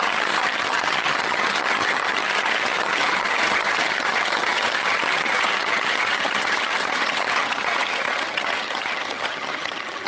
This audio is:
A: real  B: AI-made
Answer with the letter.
B